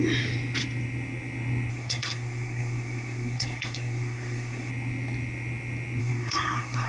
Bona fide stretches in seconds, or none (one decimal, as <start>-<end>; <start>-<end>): 0.0-1.7; 4.7-6.0